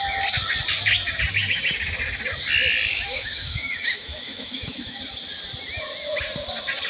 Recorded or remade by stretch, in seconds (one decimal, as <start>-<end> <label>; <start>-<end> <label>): 0.0-2.9 recorded; 2.9-5.0 remade; 5.0-6.9 recorded